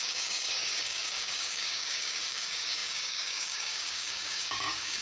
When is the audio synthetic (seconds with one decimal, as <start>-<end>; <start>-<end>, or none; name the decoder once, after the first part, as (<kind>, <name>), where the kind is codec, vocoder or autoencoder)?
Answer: 0.0-5.0 (codec, DAC)